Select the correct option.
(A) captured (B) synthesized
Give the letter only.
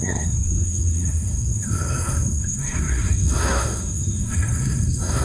B